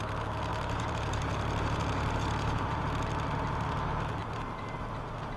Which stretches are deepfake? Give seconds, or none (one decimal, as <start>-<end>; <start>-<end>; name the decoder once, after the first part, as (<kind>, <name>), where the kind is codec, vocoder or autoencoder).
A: 0.5-2.8 (vocoder, BigVGAN v2); 4.2-4.9